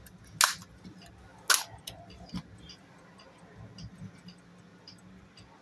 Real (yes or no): yes